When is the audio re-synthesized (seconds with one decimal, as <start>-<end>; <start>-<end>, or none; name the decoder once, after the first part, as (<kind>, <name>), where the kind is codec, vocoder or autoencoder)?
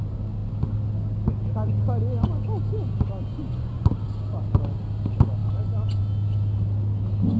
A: 3.3-3.9 (vocoder, Vocos)